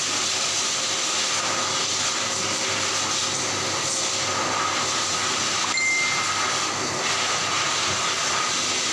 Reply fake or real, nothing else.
real